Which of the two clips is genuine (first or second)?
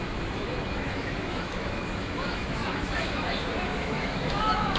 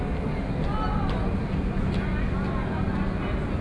second